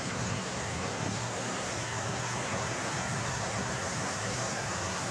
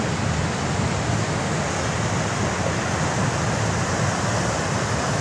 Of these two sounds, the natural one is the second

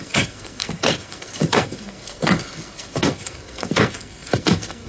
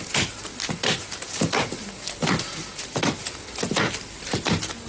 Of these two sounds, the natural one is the second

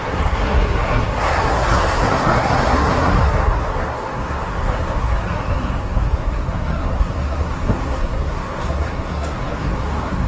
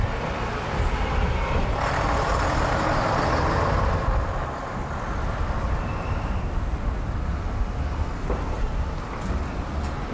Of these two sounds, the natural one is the second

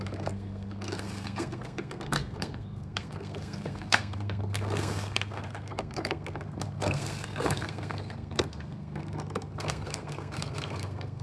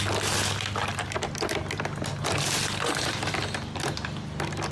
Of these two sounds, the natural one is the second